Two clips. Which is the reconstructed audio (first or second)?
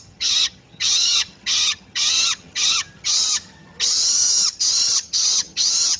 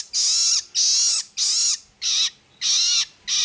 first